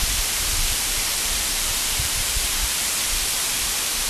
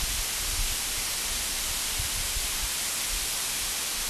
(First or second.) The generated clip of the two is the first